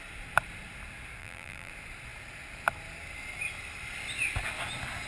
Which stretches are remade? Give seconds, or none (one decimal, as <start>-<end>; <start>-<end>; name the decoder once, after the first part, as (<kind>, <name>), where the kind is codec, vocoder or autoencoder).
1.2-1.7 (vocoder, BigVGAN v2)